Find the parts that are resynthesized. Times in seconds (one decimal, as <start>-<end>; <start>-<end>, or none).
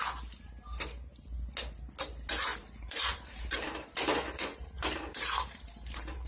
2.5-6.3